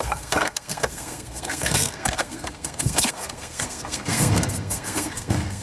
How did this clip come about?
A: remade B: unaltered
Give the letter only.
A